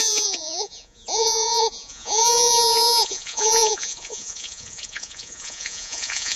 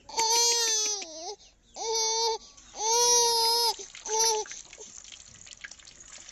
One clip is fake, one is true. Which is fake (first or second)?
first